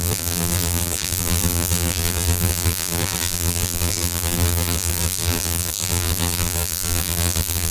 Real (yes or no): no